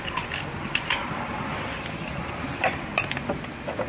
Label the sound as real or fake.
real